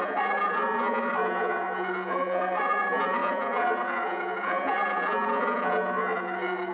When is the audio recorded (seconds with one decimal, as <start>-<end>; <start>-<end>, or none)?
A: none